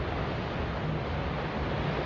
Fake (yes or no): no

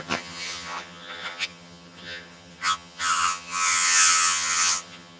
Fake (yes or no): yes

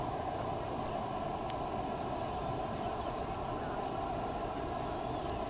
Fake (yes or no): no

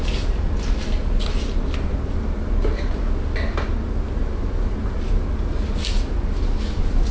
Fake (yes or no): no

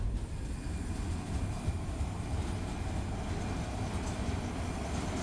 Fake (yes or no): no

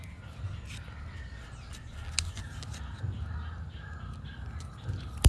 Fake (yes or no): no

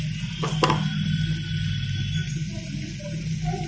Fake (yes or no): no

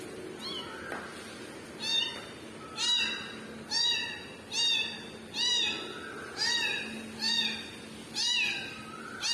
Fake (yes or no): no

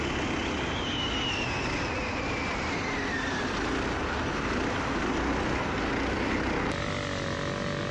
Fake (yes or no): no